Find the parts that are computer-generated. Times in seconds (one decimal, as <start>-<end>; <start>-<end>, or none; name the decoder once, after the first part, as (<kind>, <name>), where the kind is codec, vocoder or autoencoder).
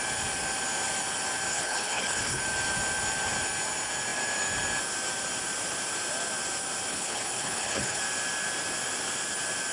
1.5-2.4 (codec, HILCodec); 6.9-8.0